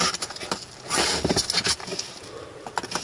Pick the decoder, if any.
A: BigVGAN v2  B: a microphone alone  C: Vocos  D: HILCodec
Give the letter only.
A